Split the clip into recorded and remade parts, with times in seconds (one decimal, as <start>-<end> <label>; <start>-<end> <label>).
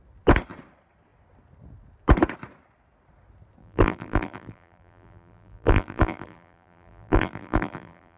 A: 0.0-3.6 recorded; 3.6-8.2 remade